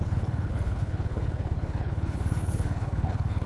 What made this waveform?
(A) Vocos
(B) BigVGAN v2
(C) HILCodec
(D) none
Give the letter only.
C